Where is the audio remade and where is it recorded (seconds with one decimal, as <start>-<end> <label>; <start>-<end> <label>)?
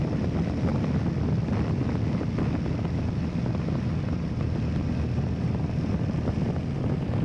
0.0-7.2 recorded